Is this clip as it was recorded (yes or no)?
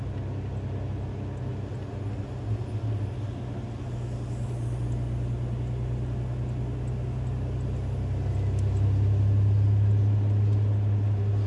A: yes